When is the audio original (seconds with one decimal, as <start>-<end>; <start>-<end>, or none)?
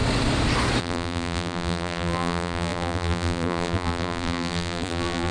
0.0-0.8